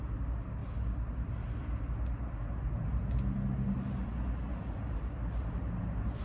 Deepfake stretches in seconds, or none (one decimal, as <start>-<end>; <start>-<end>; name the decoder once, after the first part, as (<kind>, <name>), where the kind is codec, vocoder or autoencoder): none